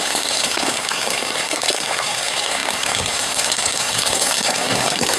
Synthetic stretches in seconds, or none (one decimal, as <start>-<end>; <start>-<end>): 0.0-5.2